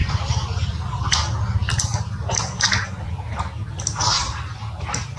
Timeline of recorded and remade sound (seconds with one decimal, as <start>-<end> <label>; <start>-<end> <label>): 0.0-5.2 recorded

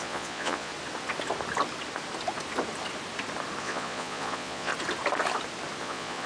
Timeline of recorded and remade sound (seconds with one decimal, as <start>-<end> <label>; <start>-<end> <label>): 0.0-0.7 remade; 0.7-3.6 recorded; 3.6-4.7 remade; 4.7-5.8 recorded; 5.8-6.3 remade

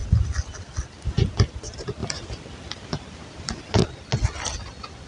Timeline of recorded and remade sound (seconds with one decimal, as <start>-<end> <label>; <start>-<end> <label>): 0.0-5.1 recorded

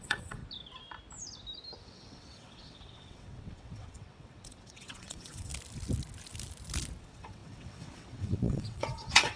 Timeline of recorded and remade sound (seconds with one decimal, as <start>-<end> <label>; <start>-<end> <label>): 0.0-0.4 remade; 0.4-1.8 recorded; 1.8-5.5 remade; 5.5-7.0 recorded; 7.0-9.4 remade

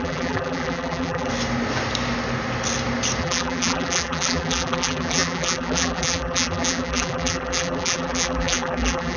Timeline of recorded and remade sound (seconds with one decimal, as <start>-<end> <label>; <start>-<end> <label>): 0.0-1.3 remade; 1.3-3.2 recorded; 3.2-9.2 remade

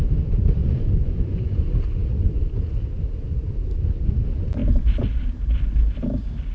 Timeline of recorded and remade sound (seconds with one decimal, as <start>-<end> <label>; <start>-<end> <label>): 0.0-0.6 recorded; 0.6-1.6 remade; 1.6-6.5 recorded